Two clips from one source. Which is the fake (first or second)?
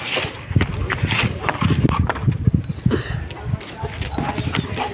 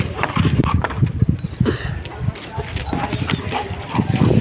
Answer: second